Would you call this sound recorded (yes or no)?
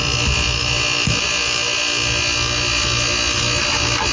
yes